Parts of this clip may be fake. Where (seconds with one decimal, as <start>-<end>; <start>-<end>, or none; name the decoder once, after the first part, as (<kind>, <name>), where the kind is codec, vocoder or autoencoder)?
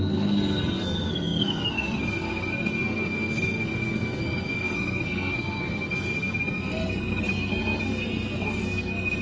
0.0-9.2 (codec, SNAC)